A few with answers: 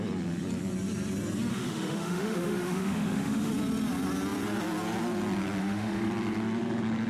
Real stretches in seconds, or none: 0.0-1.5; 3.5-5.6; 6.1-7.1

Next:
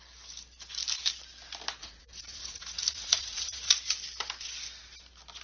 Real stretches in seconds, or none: 0.0-1.8; 3.7-5.4

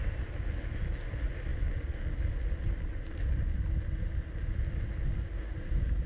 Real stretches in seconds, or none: 0.0-6.1

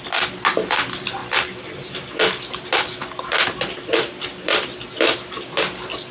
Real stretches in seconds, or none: 0.0-6.1